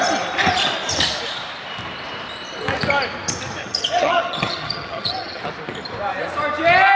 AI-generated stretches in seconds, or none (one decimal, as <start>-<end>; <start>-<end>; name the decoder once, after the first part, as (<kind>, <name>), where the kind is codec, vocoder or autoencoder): 3.6-5.4 (vocoder, HiFi-GAN)